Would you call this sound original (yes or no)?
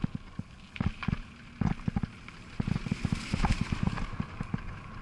yes